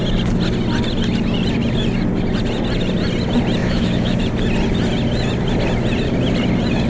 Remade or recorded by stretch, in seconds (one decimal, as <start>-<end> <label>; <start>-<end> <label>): 0.0-3.6 recorded; 3.6-4.2 remade; 4.2-6.9 recorded